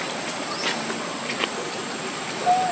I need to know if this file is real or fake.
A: real